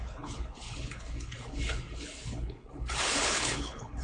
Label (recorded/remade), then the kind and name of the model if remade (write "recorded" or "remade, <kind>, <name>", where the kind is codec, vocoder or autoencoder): remade, codec, HILCodec